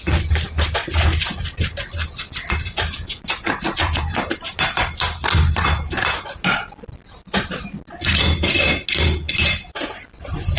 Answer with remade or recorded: recorded